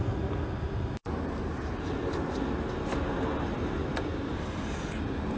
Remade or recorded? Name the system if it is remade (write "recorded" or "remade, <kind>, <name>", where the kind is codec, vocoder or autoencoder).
recorded